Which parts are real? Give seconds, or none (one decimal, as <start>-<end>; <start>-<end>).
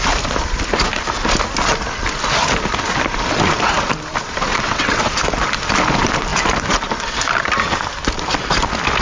0.0-4.5; 5.0-9.0